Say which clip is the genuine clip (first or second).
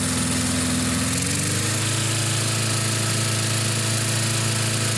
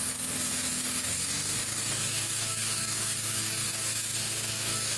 first